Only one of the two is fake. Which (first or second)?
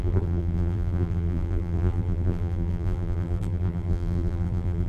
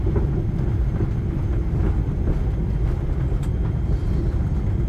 first